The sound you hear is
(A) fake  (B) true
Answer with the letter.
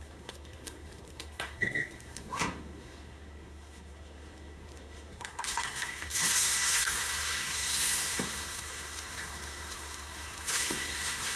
A